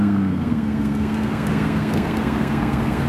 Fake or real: fake